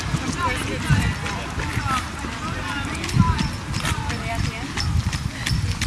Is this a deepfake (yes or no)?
no